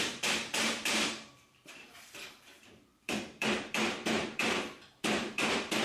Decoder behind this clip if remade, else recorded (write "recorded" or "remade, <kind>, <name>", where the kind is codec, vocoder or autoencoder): remade, vocoder, BigVGAN v2